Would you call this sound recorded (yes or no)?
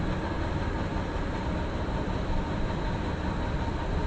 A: yes